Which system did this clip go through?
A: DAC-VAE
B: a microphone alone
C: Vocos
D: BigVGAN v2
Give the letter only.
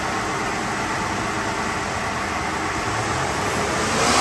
B